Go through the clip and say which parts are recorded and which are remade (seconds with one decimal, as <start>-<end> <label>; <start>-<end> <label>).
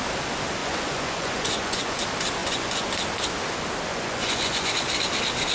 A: 0.0-0.6 recorded; 0.6-2.0 remade; 2.0-2.4 recorded; 2.4-2.9 remade; 2.9-3.9 recorded; 3.9-4.7 remade; 4.7-5.5 recorded